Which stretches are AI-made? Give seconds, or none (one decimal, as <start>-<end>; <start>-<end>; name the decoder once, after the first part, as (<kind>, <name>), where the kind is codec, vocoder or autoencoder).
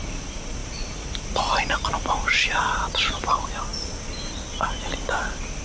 0.0-3.7 (vocoder, BigVGAN v2); 4.8-5.6